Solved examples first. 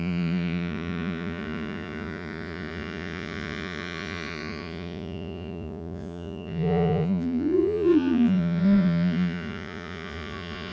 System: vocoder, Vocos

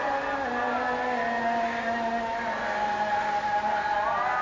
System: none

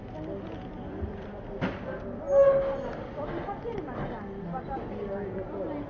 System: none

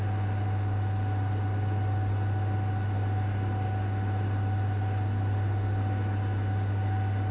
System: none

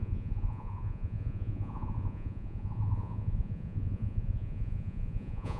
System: vocoder, Vocos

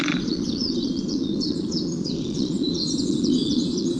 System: vocoder, Vocos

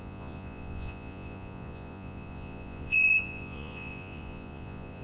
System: vocoder, Vocos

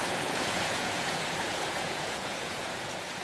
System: vocoder, Vocos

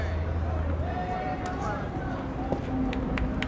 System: none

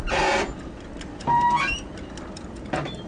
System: none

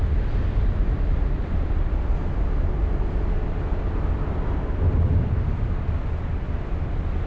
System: none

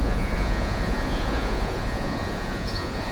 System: vocoder, Vocos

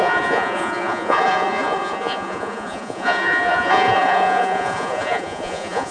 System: vocoder, Vocos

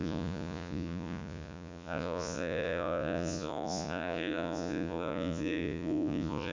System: vocoder, Vocos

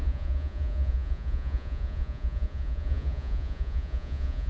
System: vocoder, Vocos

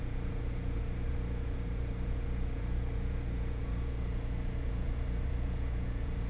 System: vocoder, Vocos